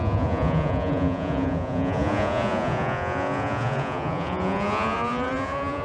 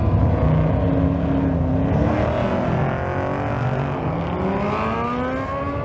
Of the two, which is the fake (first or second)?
first